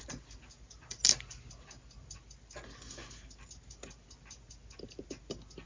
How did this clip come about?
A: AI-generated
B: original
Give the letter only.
B